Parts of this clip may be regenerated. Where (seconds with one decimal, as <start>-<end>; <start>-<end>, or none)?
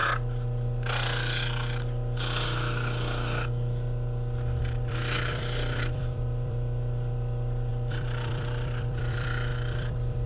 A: 4.6-10.3